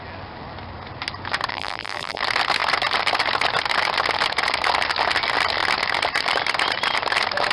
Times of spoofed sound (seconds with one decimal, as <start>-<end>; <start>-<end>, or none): 1.5-2.2